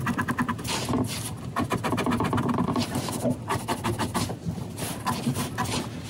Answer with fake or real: real